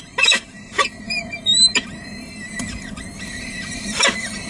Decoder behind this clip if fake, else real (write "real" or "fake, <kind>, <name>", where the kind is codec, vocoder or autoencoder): fake, vocoder, BigVGAN v2